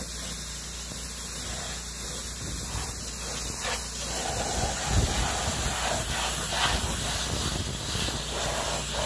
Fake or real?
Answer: real